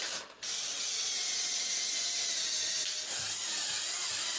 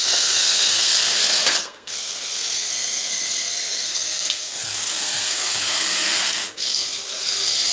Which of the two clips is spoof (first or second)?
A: second